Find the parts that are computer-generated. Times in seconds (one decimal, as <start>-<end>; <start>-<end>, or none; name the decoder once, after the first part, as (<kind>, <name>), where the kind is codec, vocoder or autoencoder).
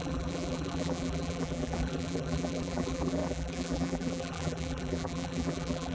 0.0-5.9 (vocoder, BigVGAN v2)